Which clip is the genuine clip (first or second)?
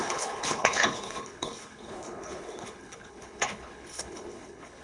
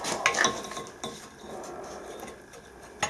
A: second